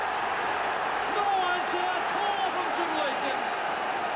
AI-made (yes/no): no